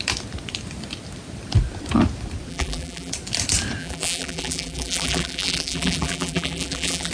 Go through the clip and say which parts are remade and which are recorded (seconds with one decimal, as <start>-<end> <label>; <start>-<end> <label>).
0.0-2.5 recorded; 2.5-3.1 remade; 3.1-3.8 recorded; 3.8-7.1 remade